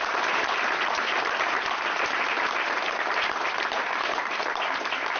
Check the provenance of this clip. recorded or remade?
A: remade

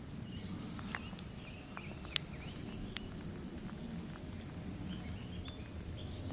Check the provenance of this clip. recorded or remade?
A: recorded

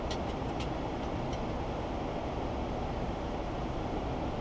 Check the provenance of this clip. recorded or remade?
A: recorded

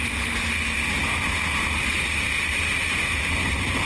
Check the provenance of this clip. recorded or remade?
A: recorded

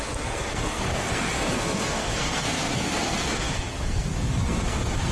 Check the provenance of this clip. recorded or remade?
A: remade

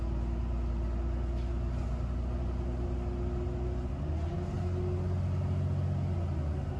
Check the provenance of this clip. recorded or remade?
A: recorded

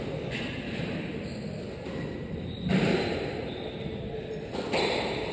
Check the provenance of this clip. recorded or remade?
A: recorded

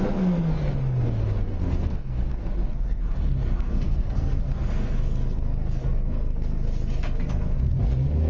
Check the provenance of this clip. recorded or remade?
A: remade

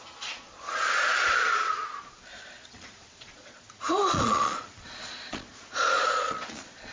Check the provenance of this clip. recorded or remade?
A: remade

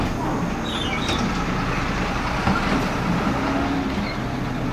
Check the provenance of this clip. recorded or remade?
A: recorded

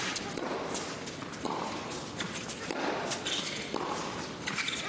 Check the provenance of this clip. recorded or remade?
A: recorded